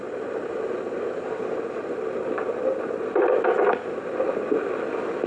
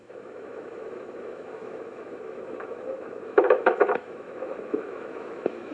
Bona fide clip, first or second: first